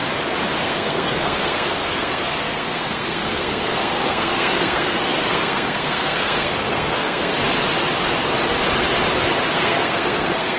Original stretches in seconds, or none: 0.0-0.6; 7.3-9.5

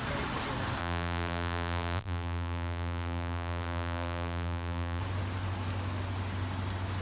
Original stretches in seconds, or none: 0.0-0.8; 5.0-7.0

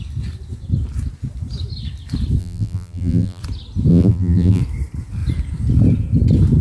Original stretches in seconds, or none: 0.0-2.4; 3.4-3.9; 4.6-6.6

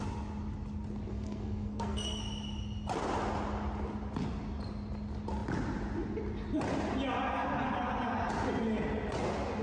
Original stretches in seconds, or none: 0.0-1.1; 2.2-9.6

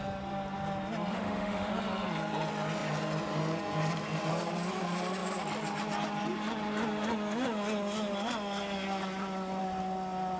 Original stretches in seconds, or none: 0.0-1.1; 1.7-10.4

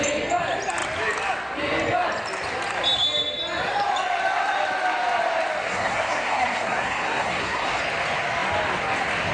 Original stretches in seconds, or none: 0.0-5.6; 7.8-9.3

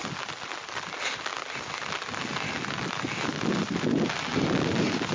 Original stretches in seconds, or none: 0.0-5.1